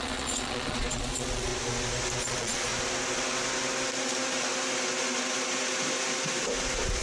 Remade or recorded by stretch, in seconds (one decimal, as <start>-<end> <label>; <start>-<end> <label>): 0.0-1.5 remade; 1.5-2.2 recorded; 2.2-2.7 remade; 2.7-7.0 recorded